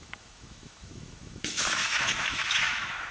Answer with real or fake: fake